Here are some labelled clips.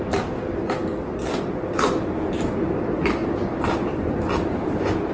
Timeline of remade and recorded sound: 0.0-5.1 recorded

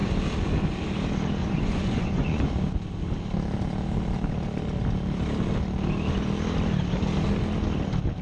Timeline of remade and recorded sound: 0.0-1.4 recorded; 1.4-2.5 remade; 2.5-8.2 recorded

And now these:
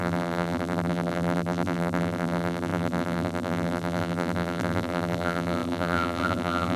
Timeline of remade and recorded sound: 0.0-6.8 remade

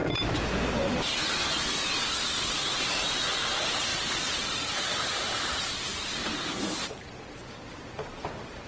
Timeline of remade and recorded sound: 0.0-0.9 recorded; 0.9-1.4 remade; 1.4-2.4 recorded; 2.4-8.7 remade

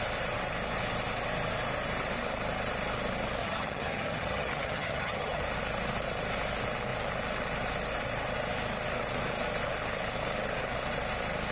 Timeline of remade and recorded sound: 0.0-3.4 recorded; 3.4-5.4 remade; 5.4-11.5 recorded

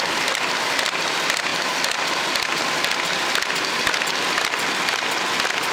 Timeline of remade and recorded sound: 0.0-5.7 recorded

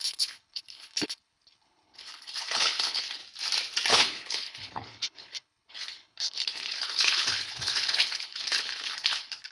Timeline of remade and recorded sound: 0.0-3.2 remade; 3.2-3.9 recorded; 3.9-9.5 remade

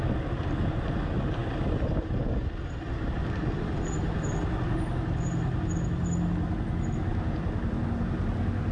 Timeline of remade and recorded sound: 0.0-8.7 recorded